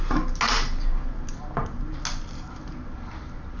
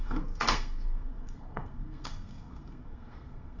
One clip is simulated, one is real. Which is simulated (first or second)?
second